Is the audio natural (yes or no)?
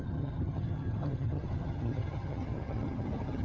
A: no